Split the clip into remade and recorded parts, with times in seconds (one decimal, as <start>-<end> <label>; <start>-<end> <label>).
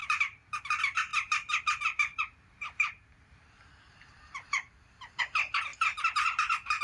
0.0-0.6 remade; 0.6-1.1 recorded; 1.1-5.2 remade; 5.2-5.7 recorded; 5.7-6.8 remade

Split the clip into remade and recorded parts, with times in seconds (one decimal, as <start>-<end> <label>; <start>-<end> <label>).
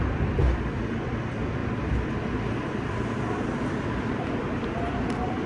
0.0-5.5 remade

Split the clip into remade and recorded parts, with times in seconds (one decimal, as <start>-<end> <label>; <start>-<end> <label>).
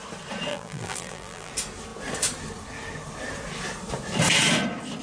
0.0-0.5 recorded; 0.5-1.5 remade; 1.5-5.0 recorded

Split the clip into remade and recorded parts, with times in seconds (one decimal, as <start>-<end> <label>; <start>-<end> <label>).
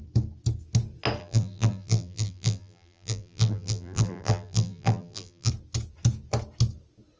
0.0-1.2 recorded; 1.2-5.5 remade; 5.5-7.2 recorded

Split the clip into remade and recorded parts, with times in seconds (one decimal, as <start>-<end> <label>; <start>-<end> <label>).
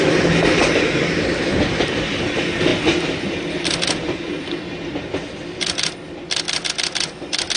0.0-0.6 recorded; 0.6-2.1 remade; 2.1-7.6 recorded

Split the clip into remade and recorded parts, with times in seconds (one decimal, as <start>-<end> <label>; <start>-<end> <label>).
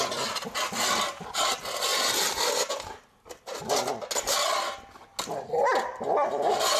0.0-6.8 recorded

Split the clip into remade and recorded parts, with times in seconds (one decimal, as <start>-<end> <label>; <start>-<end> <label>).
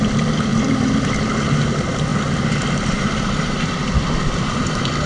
0.0-0.5 recorded; 0.5-1.2 remade; 1.2-2.1 recorded; 2.1-5.1 remade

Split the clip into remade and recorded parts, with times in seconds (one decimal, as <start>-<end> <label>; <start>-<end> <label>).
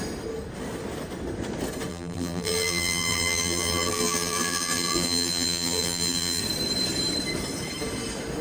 0.0-1.9 recorded; 1.9-6.4 remade; 6.4-8.4 recorded